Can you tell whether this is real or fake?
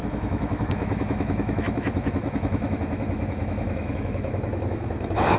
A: fake